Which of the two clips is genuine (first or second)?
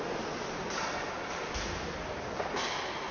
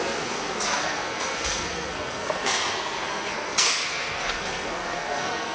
first